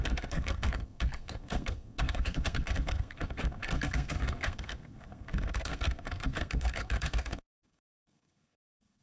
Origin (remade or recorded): remade